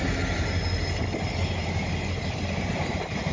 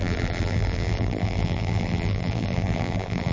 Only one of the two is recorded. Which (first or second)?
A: first